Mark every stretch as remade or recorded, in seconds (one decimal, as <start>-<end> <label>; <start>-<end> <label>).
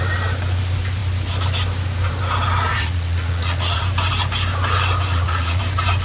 0.0-2.7 recorded; 2.7-3.8 remade; 3.8-5.1 recorded; 5.1-5.6 remade; 5.6-6.0 recorded